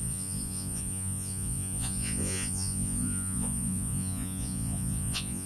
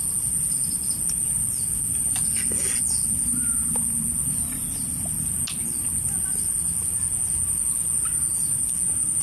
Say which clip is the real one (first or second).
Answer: second